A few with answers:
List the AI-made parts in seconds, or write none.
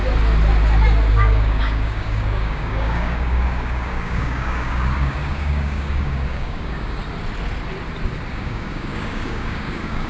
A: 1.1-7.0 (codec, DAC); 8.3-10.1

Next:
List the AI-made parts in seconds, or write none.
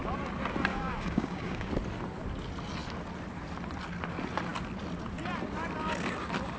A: 0.7-1.7 (codec, DAC)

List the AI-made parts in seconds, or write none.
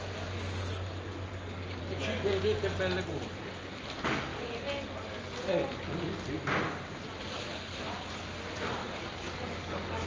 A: 1.3-1.8 (codec, DAC); 8.8-10.1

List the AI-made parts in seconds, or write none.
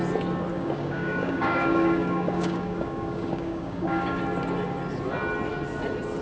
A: 0.5-4.2 (codec, DAC)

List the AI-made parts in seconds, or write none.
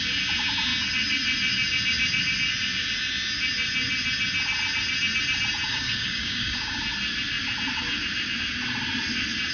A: 5.7-6.8 (codec, DAC)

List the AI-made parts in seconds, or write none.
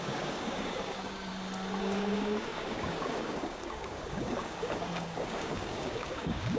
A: 0.0-1.3 (codec, DAC); 1.8-6.6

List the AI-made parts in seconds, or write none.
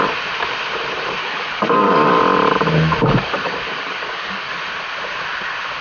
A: 1.2-2.2 (codec, DAC); 3.2-4.5